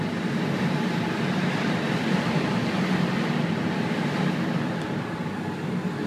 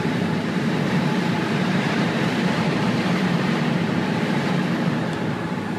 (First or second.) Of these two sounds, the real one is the first